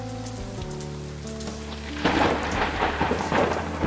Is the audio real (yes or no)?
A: yes